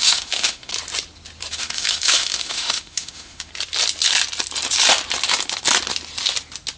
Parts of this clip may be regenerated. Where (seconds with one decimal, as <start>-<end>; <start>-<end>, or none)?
0.0-0.7; 1.5-3.5